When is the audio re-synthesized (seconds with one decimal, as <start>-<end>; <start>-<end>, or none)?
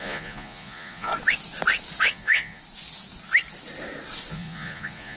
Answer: 0.0-1.1; 2.1-2.6; 4.3-5.2